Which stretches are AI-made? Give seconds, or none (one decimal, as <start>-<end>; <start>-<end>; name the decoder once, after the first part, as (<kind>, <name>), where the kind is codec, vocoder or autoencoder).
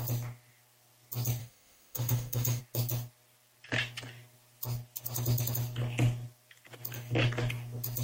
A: 1.4-2.6 (autoencoder, DAC-VAE)